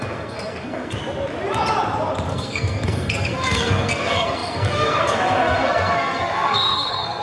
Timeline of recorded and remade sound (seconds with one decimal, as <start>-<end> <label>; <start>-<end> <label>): 0.0-1.0 remade; 1.0-2.3 recorded; 2.3-7.2 remade